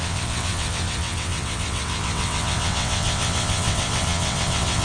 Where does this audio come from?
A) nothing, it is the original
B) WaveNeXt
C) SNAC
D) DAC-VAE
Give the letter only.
B